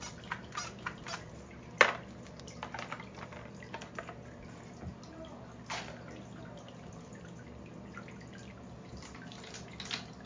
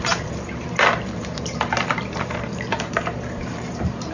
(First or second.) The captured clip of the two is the first